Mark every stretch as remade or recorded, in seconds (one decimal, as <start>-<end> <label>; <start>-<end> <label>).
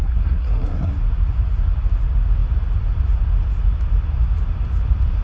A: 0.0-0.9 remade; 0.9-5.2 recorded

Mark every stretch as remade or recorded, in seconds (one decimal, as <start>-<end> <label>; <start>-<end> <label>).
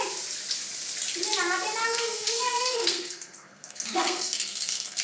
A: 0.0-1.8 recorded; 1.8-5.0 remade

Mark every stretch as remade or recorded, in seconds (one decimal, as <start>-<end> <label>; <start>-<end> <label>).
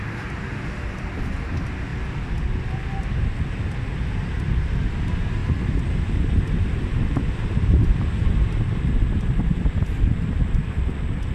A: 0.0-11.3 recorded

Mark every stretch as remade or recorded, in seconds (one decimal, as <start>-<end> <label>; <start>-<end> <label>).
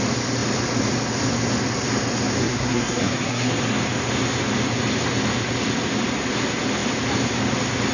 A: 0.0-2.4 recorded; 2.4-3.5 remade; 3.5-7.9 recorded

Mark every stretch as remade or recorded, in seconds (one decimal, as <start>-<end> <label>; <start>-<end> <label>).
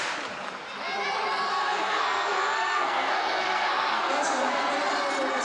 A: 0.0-1.5 recorded; 1.5-4.7 remade; 4.7-5.4 recorded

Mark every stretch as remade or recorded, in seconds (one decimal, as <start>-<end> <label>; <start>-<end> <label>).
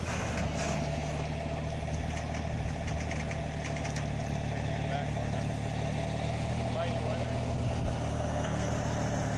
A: 0.0-8.1 recorded; 8.1-8.7 remade; 8.7-9.4 recorded